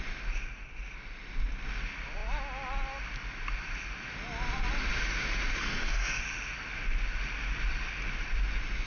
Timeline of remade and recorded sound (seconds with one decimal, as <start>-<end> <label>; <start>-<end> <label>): 0.0-5.6 recorded; 5.6-6.2 remade; 6.2-8.9 recorded